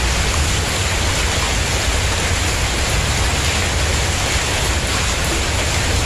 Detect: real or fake real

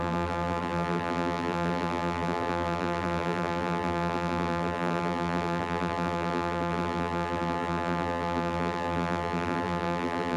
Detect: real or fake fake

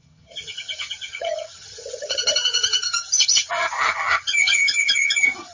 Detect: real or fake fake